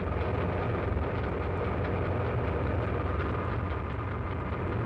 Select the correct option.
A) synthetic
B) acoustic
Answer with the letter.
B